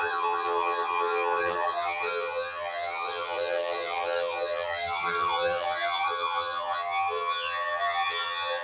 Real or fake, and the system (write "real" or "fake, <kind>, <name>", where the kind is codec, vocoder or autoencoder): fake, vocoder, HiFi-GAN